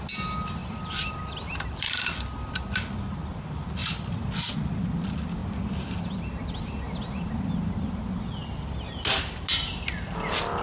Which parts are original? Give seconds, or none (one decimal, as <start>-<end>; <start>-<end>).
0.0-0.6; 2.6-3.8; 4.5-10.6